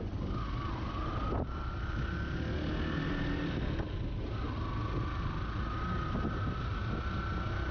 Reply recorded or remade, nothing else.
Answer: recorded